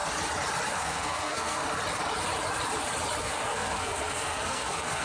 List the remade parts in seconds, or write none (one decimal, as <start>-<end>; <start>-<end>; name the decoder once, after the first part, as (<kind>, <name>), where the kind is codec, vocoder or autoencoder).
0.7-1.6 (codec, SNAC); 3.2-5.0